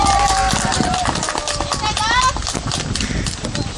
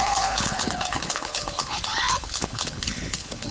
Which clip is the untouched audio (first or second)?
first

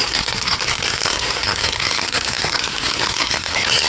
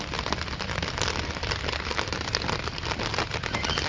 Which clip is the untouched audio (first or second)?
second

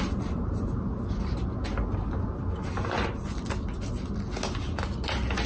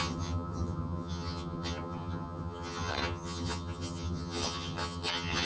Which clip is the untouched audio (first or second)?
first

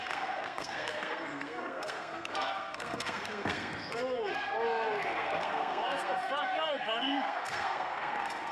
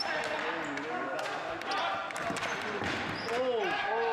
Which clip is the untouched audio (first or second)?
second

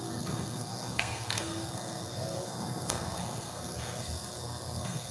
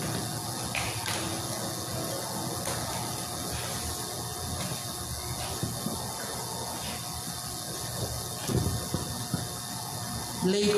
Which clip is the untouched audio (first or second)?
second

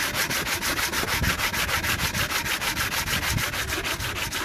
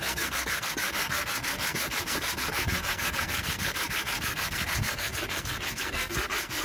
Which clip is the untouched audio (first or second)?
first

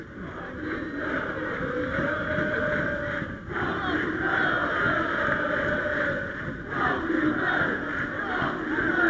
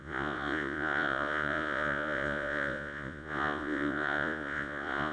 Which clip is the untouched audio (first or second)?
first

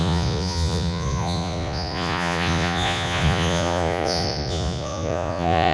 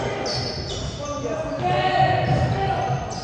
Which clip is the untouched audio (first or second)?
second